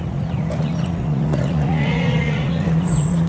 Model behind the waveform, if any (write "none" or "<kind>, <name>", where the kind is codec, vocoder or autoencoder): vocoder, Vocos